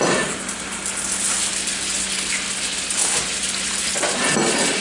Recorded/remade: recorded